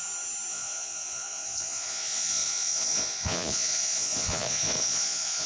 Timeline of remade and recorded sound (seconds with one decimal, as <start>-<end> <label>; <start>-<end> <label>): 0.0-0.5 recorded; 0.5-5.5 remade